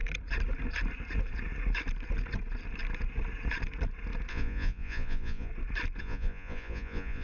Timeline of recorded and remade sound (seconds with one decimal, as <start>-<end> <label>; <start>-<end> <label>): 0.0-4.3 recorded; 4.3-5.5 remade; 5.5-6.0 recorded; 6.0-7.2 remade